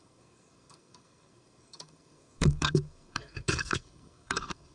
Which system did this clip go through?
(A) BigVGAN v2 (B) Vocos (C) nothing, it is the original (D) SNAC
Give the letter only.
D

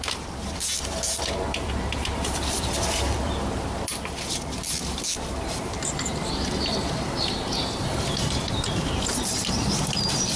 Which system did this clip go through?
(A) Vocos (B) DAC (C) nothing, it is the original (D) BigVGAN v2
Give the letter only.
D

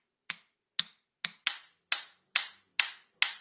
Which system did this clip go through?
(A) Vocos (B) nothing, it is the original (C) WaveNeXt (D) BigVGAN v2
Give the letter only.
B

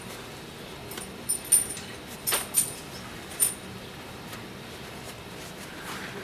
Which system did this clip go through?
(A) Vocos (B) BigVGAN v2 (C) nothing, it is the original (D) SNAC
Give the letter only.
C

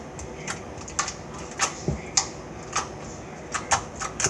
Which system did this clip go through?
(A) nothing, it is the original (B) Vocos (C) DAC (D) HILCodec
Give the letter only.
A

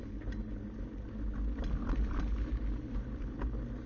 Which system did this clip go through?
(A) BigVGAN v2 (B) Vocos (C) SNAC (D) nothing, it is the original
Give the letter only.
D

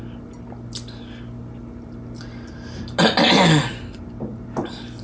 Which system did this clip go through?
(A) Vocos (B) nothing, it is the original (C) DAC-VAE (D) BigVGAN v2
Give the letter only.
B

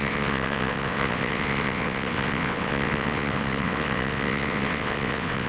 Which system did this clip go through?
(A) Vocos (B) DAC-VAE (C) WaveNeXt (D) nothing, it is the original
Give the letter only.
C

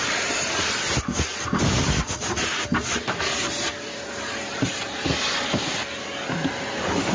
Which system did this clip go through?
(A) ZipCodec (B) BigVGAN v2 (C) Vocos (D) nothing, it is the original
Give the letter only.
D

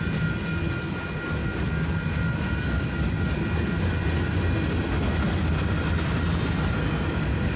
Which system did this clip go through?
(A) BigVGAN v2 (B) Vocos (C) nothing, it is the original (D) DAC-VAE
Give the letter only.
C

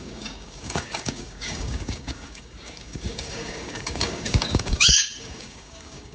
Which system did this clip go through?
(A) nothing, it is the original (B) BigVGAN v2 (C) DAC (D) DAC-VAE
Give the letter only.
C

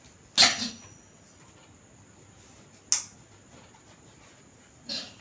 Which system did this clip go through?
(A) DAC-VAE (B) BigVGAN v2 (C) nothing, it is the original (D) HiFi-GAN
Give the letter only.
C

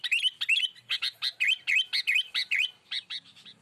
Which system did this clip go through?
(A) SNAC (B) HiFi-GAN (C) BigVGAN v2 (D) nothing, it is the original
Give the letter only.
D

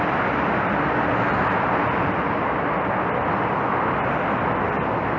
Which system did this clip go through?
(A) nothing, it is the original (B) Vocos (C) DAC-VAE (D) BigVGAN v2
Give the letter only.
A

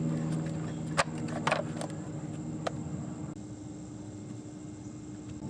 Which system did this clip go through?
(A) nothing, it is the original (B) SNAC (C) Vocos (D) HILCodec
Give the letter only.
A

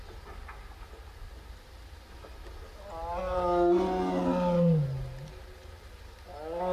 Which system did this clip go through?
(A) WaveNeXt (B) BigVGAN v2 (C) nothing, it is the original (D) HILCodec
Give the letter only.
C